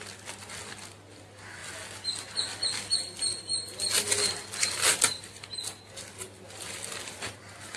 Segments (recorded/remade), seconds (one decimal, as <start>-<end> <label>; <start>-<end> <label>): 0.0-7.8 recorded